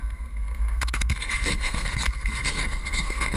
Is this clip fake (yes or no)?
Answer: yes